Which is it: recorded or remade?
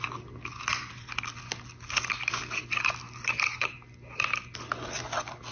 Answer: recorded